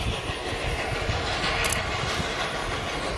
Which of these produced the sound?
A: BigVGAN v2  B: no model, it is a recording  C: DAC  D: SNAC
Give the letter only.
B